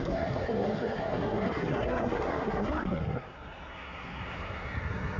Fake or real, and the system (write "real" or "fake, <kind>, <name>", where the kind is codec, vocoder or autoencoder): fake, codec, SNAC